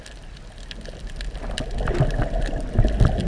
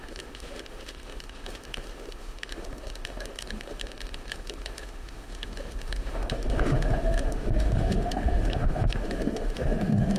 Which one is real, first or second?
first